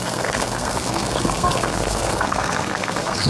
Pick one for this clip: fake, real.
fake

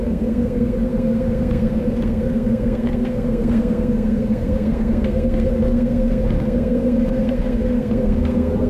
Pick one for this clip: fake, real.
fake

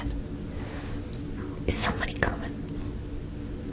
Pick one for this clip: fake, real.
real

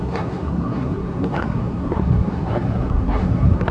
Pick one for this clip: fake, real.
fake